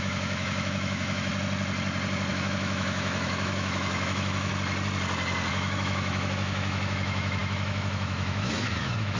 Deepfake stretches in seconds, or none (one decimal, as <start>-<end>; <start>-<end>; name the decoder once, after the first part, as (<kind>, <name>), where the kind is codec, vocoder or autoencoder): 0.0-1.3 (autoencoder, DAC-VAE); 2.3-4.5; 5.5-9.2